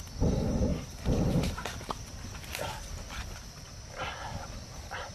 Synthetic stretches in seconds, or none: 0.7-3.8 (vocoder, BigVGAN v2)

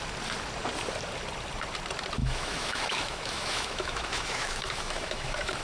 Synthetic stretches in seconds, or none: 2.2-5.6 (autoencoder, DAC-VAE)

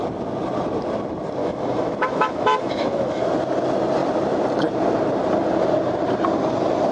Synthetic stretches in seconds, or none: 1.4-3.2 (autoencoder, DAC-VAE)

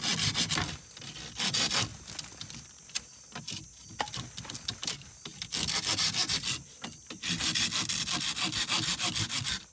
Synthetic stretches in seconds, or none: none